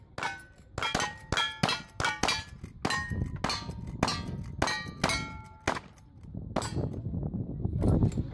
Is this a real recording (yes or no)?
yes